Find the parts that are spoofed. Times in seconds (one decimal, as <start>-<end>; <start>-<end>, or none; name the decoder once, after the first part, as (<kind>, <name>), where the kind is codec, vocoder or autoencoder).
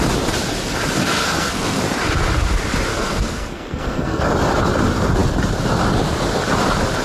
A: 1.0-1.8 (codec, SNAC); 2.9-4.2